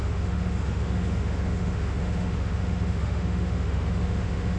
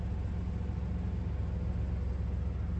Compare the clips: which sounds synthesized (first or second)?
first